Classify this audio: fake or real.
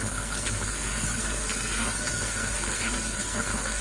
fake